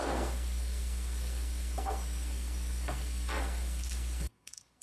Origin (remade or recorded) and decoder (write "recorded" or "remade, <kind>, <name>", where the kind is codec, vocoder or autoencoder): remade, codec, SNAC